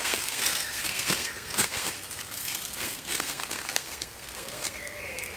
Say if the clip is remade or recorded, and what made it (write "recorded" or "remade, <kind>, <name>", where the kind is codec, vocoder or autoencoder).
remade, codec, SNAC